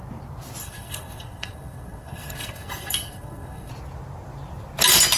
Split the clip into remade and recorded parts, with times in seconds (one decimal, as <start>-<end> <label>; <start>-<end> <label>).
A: 0.0-0.6 recorded; 0.6-3.7 remade; 3.7-5.2 recorded